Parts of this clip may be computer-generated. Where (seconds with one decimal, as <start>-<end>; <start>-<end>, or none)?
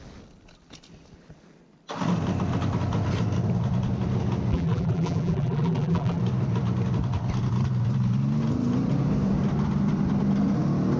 4.5-6.2